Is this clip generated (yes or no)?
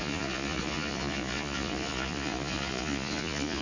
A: yes